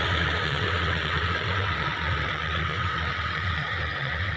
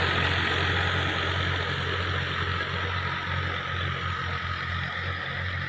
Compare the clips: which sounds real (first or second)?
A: second